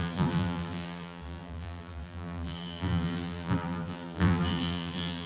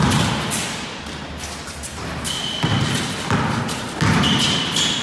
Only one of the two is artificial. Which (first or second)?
first